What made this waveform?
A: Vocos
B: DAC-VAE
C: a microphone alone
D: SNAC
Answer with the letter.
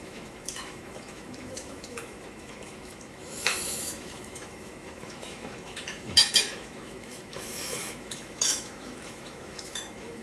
B